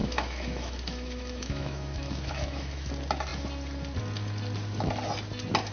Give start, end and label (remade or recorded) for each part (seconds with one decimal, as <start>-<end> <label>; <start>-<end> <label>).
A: 0.0-2.9 remade; 2.9-5.7 recorded